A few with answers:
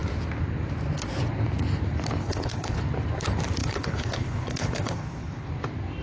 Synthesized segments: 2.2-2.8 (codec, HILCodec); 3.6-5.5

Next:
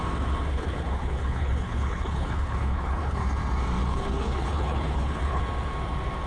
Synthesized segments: 0.5-3.2 (codec, HILCodec); 3.8-5.4

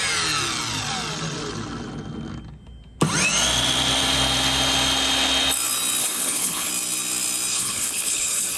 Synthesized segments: 6.0-6.7 (codec, HILCodec); 7.5-8.6

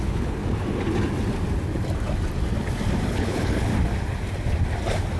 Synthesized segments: 0.0-0.4 (codec, HILCodec); 3.1-3.7

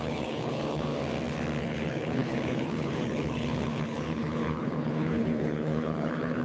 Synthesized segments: 0.0-0.9 (codec, HILCodec); 1.6-6.4

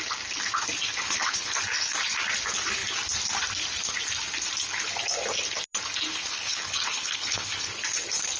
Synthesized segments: 0.9-1.6 (codec, HILCodec); 6.1-7.7

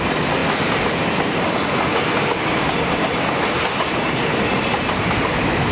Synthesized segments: none